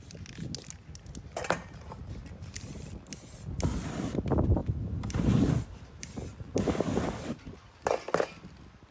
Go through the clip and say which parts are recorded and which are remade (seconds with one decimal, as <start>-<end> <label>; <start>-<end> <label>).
0.0-4.6 recorded; 4.6-5.9 remade; 5.9-8.9 recorded